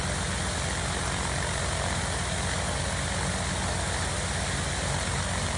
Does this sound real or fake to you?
real